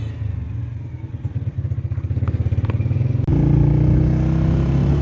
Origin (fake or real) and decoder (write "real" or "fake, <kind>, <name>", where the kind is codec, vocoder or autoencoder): real